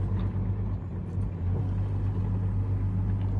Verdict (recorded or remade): recorded